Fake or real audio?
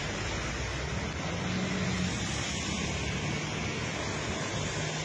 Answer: real